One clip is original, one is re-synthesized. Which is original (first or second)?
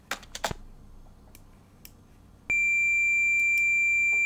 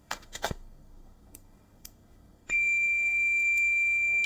first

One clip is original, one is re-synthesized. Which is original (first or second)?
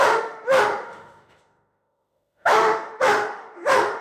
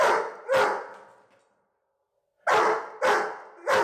second